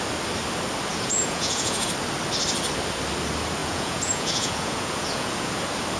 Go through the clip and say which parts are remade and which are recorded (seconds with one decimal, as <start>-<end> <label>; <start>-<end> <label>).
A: 0.0-0.9 recorded; 0.9-1.9 remade; 1.9-3.6 recorded; 3.6-5.5 remade; 5.5-6.0 recorded